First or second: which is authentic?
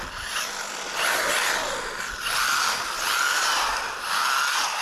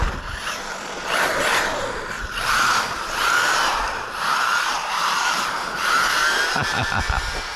first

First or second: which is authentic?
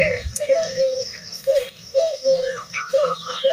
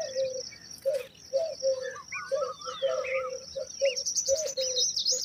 second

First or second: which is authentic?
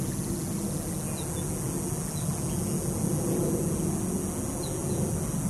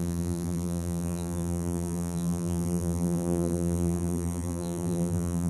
first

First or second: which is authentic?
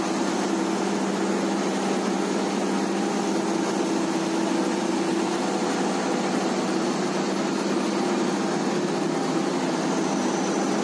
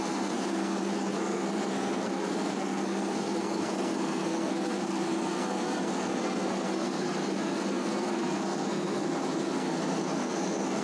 first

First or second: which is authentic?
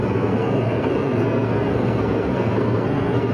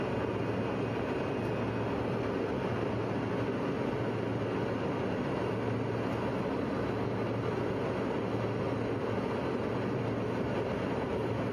second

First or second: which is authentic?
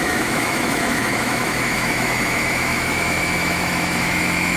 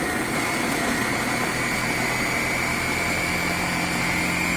second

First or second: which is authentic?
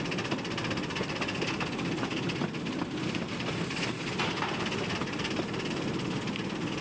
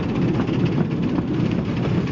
first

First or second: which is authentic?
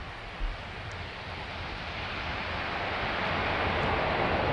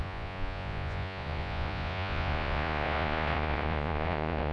first